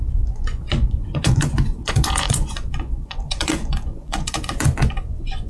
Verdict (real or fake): fake